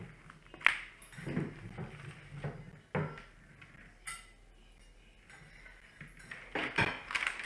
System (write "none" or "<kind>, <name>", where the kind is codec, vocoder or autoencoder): none